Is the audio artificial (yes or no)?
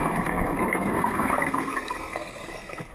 yes